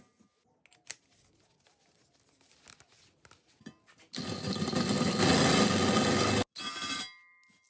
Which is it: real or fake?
real